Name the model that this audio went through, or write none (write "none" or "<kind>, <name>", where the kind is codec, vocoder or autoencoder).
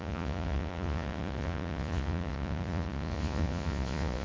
vocoder, Vocos